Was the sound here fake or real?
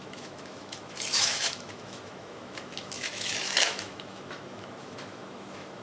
fake